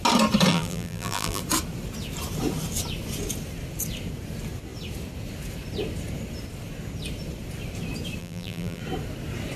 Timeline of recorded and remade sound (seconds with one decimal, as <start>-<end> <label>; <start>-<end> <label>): 0.0-0.5 recorded; 0.5-1.4 remade; 1.4-8.2 recorded; 8.2-8.8 remade; 8.8-9.6 recorded